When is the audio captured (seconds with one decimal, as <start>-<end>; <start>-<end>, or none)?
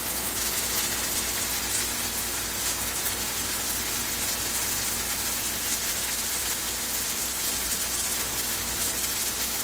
0.0-9.6